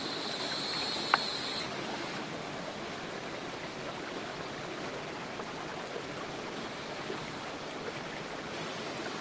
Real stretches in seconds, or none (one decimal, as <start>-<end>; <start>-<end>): 0.0-1.9; 3.0-9.2

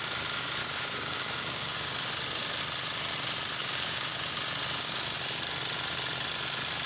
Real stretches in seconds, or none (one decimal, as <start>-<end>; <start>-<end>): 0.0-0.6; 1.9-3.6; 4.3-6.9

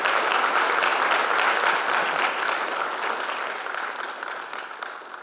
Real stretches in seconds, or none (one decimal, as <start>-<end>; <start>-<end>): 0.0-5.2

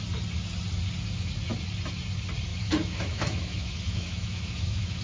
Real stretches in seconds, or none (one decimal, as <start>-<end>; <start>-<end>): 0.0-2.5

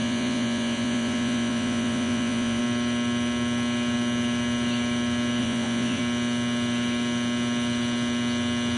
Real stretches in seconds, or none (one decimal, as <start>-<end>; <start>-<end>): 2.6-5.4; 6.0-8.8

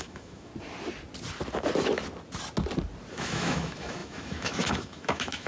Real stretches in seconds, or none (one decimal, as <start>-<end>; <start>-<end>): 0.5-3.1